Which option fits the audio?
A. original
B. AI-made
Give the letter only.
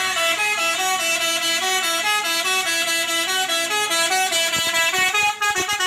A